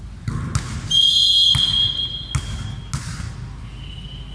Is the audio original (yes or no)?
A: yes